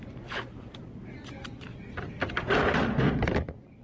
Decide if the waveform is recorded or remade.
recorded